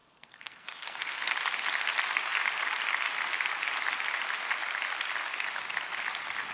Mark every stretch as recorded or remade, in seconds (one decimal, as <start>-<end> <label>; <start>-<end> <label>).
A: 0.0-1.3 remade; 1.3-6.5 recorded

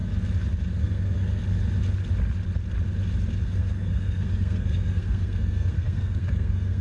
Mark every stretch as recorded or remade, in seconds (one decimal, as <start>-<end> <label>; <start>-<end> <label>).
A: 0.0-0.8 recorded; 0.8-1.4 remade; 1.4-3.4 recorded; 3.4-6.8 remade

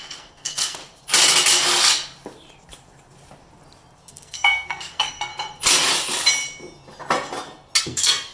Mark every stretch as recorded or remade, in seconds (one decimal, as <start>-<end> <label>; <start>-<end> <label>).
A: 0.0-0.8 remade; 0.8-4.1 recorded; 4.1-5.3 remade; 5.3-7.8 recorded; 7.8-8.3 remade

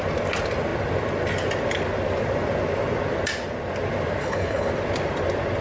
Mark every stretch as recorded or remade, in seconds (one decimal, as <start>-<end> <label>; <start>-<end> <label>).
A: 0.0-4.2 recorded; 4.2-4.7 remade; 4.7-5.6 recorded

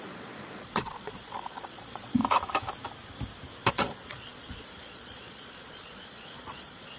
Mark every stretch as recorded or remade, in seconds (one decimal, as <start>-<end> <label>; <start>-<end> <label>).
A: 0.0-2.2 remade; 2.2-3.7 recorded; 3.7-7.0 remade

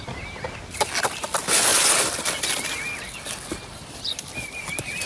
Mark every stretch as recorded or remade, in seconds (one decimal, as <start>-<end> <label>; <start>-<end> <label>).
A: 0.0-5.1 recorded

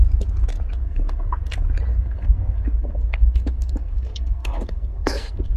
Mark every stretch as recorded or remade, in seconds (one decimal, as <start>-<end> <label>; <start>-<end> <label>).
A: 0.0-0.8 recorded; 0.8-1.4 remade; 1.4-1.9 recorded; 1.9-5.6 remade

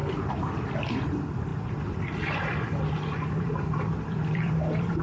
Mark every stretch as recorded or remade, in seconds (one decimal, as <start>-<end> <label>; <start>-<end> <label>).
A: 0.0-1.0 recorded; 1.0-5.0 remade